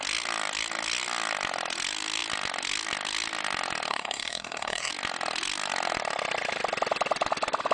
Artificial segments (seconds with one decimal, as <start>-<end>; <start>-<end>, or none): 3.9-4.9